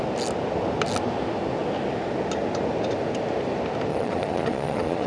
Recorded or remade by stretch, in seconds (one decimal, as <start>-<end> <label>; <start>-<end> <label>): 0.0-3.9 recorded; 3.9-5.1 remade